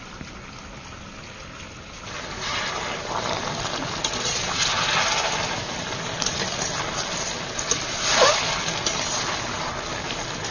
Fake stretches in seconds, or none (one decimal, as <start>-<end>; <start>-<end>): 4.1-4.6